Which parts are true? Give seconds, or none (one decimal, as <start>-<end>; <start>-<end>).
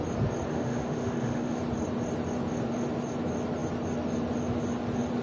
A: 0.0-0.5; 1.6-5.2